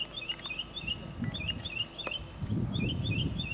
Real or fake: real